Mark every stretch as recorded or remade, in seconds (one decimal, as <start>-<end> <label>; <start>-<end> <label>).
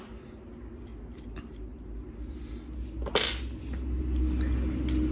0.0-5.1 recorded